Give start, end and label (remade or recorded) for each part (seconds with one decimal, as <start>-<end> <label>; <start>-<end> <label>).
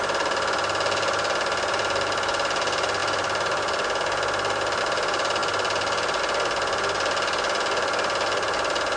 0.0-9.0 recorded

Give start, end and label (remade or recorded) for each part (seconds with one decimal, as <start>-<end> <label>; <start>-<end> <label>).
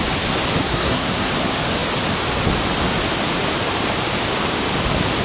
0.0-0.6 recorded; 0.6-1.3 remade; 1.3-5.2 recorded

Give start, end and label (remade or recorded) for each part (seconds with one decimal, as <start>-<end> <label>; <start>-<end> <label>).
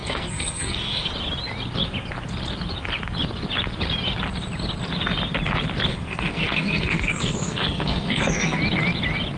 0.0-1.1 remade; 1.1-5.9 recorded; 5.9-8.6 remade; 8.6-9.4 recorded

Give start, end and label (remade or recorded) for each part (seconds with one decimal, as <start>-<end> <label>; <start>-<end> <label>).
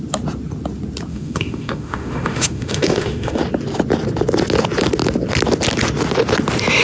0.0-1.1 recorded; 1.1-3.4 remade; 3.4-6.8 recorded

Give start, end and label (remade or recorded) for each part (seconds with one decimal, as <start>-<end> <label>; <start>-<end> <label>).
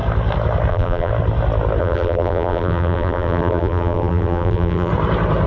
0.0-0.7 recorded; 0.7-1.1 remade; 1.1-1.8 recorded; 1.8-4.9 remade; 4.9-5.5 recorded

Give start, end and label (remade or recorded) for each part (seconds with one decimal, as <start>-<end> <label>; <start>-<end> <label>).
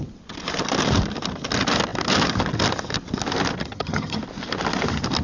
0.0-3.6 recorded; 3.6-4.2 remade; 4.2-5.2 recorded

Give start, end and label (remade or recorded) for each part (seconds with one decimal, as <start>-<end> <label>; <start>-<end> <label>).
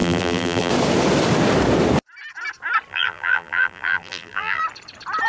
0.0-0.7 remade; 0.7-2.9 recorded; 2.9-4.6 remade; 4.6-5.3 recorded